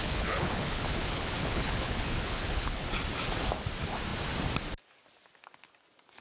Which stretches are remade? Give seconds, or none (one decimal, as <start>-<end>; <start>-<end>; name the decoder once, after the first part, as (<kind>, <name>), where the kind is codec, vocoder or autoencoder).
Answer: 0.0-2.9 (codec, HILCodec)